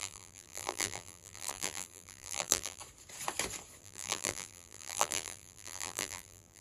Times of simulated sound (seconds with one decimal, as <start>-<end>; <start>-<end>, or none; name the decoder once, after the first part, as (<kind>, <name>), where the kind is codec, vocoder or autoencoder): 0.0-2.8 (vocoder, BigVGAN v2); 3.8-6.6